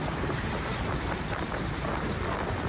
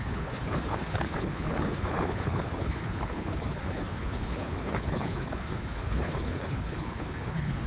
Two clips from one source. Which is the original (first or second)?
first